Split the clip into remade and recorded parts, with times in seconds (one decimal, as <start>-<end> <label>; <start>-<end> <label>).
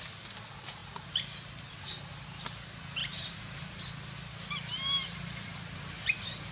0.0-3.0 recorded; 3.0-3.9 remade; 3.9-6.5 recorded